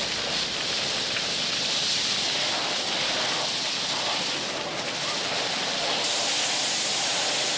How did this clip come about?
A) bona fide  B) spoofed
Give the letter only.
A